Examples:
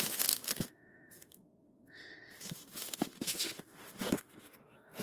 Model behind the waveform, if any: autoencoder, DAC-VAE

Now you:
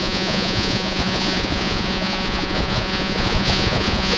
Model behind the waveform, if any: vocoder, Vocos